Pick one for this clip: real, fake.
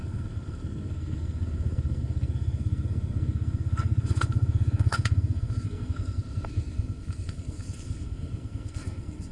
fake